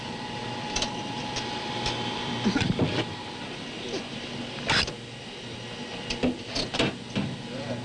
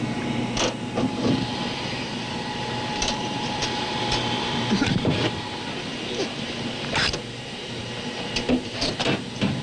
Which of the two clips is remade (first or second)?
second